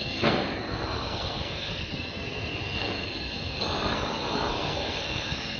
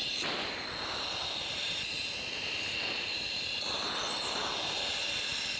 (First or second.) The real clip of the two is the second